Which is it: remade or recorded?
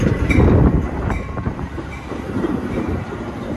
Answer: remade